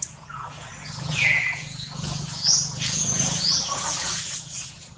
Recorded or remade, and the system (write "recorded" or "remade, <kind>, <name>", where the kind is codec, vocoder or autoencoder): remade, vocoder, Vocos